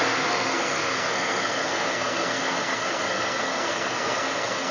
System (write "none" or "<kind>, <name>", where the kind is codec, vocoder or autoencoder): codec, SNAC